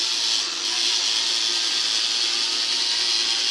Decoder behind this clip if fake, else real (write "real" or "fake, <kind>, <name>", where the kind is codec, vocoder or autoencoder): real